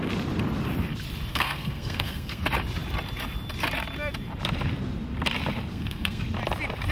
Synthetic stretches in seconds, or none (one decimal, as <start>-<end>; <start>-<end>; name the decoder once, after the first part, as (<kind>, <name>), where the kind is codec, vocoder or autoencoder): 1.3-2.4 (codec, SNAC); 5.7-6.2

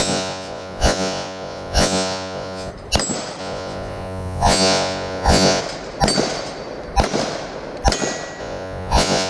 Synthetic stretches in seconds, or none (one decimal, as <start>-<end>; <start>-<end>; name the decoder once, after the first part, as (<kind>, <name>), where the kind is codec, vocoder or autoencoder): 0.0-2.7 (vocoder, Vocos); 3.4-5.6; 8.4-9.3

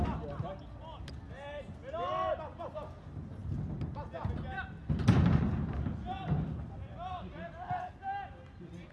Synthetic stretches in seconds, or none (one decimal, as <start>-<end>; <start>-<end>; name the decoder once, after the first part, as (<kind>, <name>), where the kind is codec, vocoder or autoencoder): none

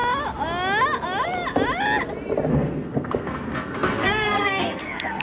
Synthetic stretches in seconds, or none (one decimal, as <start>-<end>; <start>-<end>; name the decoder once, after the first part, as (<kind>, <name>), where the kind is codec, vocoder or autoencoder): 2.5-5.2 (codec, SNAC)

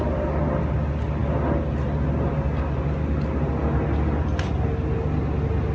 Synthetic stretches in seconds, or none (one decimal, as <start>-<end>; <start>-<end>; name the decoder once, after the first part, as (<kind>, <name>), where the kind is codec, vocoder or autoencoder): none

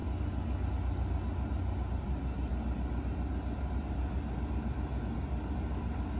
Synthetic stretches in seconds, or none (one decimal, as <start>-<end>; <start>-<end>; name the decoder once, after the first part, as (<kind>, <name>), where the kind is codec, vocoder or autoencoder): none

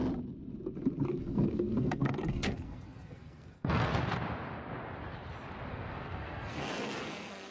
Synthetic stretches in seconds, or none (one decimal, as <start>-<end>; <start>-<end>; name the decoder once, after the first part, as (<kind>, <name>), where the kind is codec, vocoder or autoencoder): 1.1-3.9 (codec, SNAC); 5.7-7.5

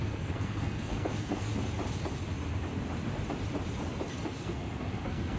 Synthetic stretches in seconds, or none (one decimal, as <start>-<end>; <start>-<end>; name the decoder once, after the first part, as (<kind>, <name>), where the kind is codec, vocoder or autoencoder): 0.0-1.5 (codec, SNAC); 4.4-5.4